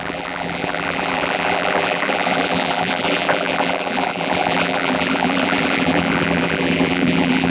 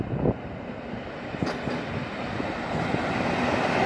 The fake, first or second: first